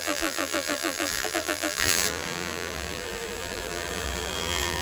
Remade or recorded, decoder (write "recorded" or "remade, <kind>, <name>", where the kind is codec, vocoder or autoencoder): remade, vocoder, BigVGAN v2